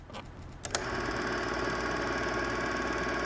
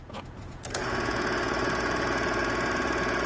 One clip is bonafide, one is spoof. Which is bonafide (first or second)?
first